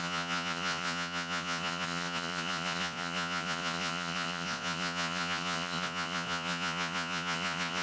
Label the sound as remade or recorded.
remade